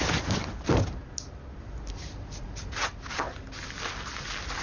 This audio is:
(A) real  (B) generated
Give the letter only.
A